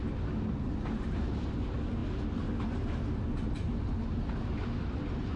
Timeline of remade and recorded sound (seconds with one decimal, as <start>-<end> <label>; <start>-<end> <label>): 0.0-5.4 recorded